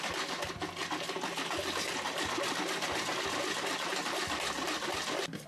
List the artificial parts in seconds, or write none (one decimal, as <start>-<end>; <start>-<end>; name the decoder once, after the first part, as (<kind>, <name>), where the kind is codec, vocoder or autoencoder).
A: none